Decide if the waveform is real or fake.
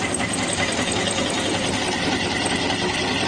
real